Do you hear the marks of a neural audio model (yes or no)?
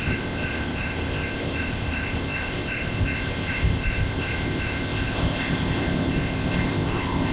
yes